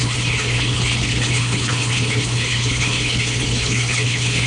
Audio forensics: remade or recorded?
remade